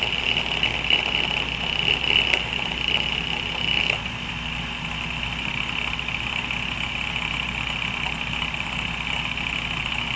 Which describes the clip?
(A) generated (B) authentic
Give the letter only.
B